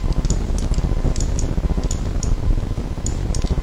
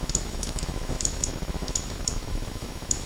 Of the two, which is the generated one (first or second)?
second